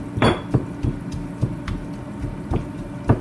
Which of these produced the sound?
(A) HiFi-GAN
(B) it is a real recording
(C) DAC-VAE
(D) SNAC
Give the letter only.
B